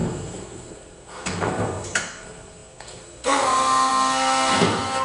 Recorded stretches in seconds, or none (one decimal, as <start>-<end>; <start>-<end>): none